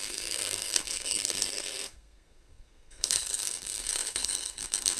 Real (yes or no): no